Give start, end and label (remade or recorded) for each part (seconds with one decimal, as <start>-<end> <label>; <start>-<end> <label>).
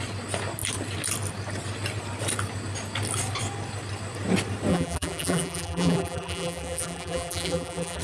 0.0-4.7 recorded; 4.7-8.0 remade